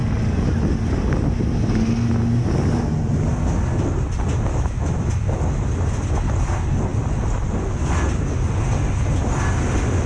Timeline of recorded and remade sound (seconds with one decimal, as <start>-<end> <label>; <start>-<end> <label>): 0.0-4.5 recorded; 4.5-5.1 remade; 5.1-10.1 recorded